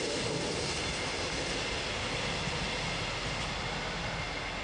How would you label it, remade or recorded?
recorded